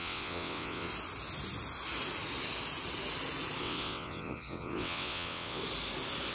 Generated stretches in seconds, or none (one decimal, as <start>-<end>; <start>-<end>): 0.0-0.9; 3.6-5.6